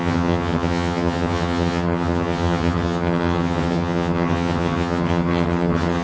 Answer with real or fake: fake